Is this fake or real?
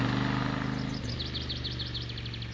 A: real